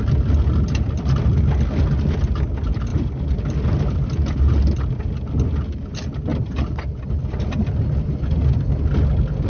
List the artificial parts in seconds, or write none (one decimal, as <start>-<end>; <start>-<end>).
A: 2.9-3.4